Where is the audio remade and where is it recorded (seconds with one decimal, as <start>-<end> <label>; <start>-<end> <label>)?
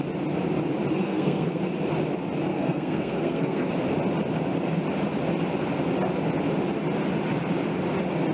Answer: 0.0-1.0 recorded; 1.0-1.6 remade; 1.6-2.5 recorded; 2.5-3.7 remade; 3.7-8.3 recorded